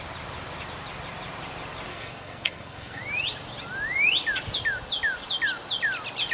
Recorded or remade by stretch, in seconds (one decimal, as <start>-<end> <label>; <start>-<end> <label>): 0.0-1.9 recorded; 1.9-3.0 remade; 3.0-6.3 recorded